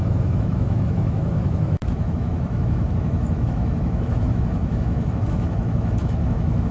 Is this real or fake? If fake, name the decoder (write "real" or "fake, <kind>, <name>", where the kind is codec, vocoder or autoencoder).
fake, autoencoder, DAC-VAE